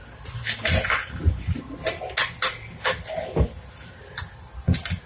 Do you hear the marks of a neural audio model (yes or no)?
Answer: no